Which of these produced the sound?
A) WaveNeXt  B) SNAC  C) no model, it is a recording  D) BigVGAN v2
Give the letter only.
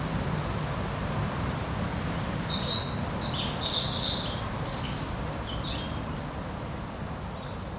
C